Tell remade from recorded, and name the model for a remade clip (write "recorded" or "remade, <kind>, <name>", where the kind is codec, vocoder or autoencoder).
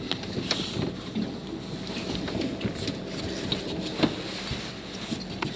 recorded